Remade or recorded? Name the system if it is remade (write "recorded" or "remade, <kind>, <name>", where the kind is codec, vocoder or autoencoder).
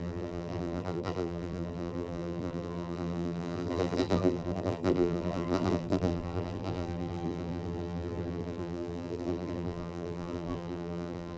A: remade, vocoder, BigVGAN v2